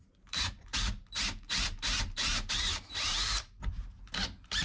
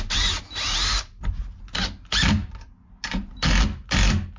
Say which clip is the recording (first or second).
second